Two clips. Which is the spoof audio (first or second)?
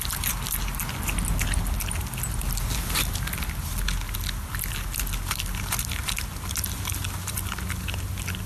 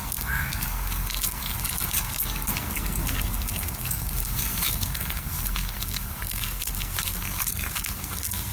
second